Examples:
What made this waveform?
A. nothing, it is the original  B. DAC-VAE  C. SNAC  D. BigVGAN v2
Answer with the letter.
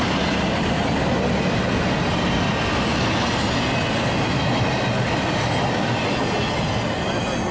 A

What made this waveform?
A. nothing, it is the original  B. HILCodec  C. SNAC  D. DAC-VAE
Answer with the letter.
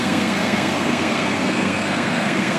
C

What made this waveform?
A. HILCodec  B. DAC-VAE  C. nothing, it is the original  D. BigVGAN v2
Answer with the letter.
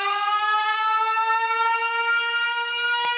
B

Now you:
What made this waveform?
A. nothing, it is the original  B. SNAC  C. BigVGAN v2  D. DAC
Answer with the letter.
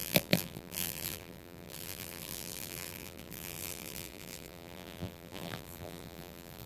C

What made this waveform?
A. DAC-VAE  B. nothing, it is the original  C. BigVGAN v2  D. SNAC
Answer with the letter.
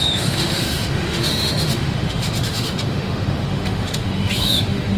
A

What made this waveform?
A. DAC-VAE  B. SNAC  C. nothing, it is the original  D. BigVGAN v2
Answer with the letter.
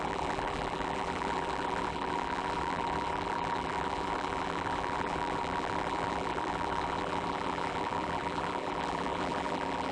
D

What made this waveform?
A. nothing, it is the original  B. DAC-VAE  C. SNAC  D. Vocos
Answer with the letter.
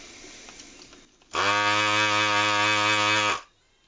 A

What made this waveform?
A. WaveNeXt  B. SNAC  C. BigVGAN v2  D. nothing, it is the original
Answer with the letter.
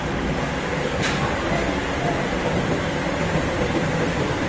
D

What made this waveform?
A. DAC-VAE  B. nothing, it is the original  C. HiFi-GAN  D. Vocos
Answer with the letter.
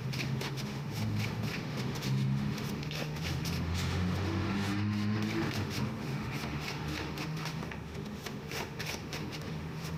A